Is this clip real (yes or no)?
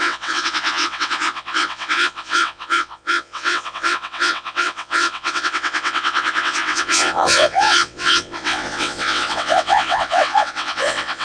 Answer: no